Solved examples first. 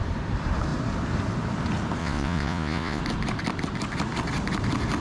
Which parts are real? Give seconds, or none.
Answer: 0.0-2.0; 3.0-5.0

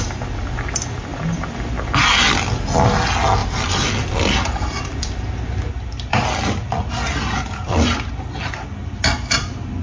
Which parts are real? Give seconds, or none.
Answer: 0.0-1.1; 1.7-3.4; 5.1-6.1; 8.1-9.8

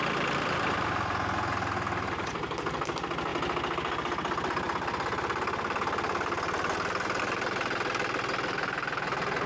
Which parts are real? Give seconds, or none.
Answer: 0.0-9.5